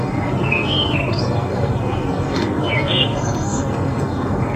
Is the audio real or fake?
fake